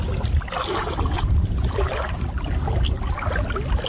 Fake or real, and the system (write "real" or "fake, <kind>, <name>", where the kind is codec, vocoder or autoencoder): real